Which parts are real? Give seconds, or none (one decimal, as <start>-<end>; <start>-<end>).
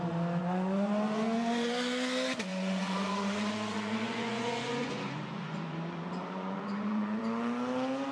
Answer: 0.0-0.4; 1.7-2.5; 7.2-8.1